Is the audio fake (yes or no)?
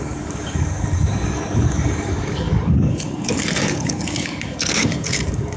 yes